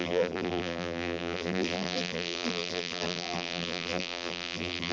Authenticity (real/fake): fake